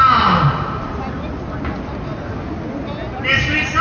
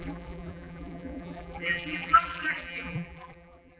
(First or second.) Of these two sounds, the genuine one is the first